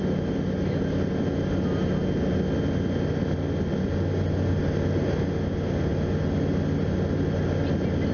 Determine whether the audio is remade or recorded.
recorded